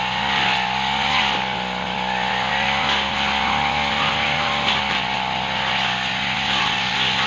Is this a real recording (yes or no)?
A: yes